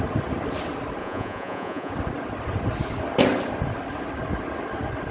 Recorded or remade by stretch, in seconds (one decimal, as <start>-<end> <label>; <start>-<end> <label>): 0.0-1.0 recorded; 1.0-1.9 remade; 1.9-5.1 recorded